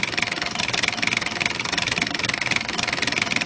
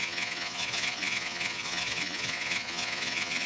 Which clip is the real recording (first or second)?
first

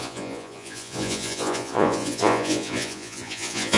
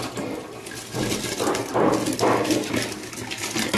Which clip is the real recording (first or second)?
second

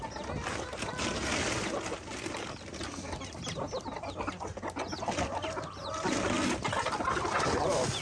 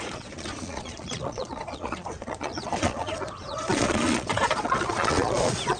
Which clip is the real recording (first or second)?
first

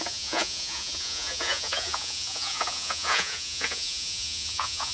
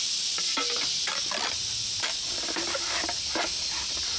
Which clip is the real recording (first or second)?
second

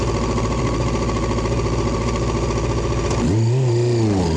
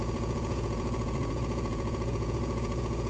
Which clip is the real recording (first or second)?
first